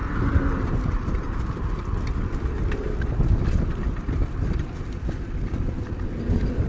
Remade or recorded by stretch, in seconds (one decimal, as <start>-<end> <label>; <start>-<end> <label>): 0.0-6.7 recorded